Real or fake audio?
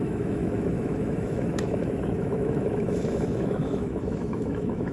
fake